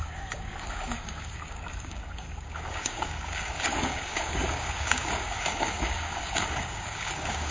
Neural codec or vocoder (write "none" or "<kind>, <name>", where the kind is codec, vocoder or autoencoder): codec, DAC